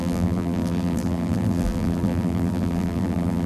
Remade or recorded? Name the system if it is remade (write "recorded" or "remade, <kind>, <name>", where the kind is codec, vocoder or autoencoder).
remade, vocoder, BigVGAN v2